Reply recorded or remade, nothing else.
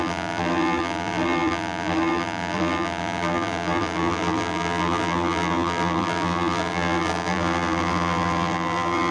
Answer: remade